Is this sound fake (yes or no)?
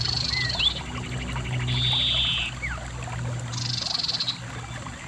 no